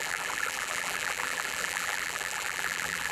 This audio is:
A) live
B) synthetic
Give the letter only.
B